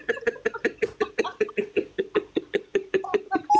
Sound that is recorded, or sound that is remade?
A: recorded